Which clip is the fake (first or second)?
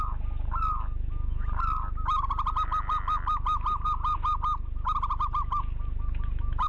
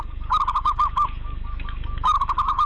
second